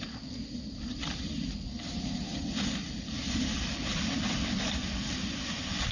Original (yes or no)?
no